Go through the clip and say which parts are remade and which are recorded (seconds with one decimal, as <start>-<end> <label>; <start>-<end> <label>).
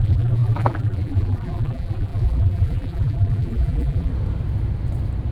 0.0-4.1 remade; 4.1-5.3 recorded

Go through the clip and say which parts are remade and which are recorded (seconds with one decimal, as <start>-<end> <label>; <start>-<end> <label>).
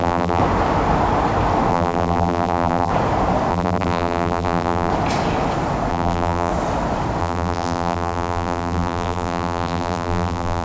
0.0-0.4 remade; 0.4-1.7 recorded; 1.7-2.9 remade; 2.9-3.5 recorded; 3.5-4.9 remade; 4.9-5.9 recorded; 5.9-6.5 remade; 6.5-7.2 recorded; 7.2-10.6 remade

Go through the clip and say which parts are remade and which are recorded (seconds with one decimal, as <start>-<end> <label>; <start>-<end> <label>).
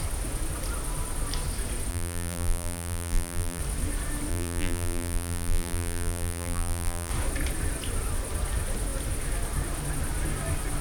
0.0-1.9 recorded; 1.9-3.6 remade; 3.6-4.3 recorded; 4.3-7.1 remade; 7.1-10.8 recorded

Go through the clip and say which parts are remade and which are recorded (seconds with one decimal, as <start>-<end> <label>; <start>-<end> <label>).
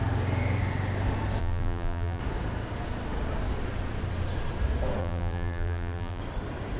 0.0-1.4 recorded; 1.4-2.2 remade; 2.2-5.0 recorded; 5.0-6.2 remade; 6.2-6.8 recorded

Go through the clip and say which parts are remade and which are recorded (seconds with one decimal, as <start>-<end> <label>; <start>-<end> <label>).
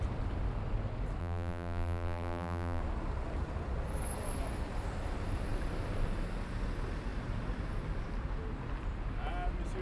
0.0-1.2 recorded; 1.2-2.8 remade; 2.8-9.8 recorded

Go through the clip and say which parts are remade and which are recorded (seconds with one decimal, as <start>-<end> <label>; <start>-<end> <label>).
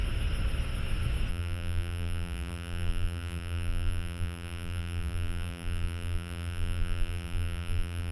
0.0-1.3 recorded; 1.3-8.1 remade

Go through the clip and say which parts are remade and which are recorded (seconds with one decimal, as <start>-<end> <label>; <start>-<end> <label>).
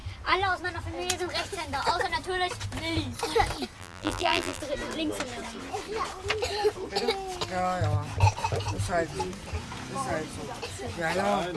0.0-3.8 recorded; 3.8-4.6 remade; 4.6-11.6 recorded